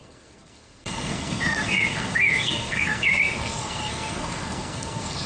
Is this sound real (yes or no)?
no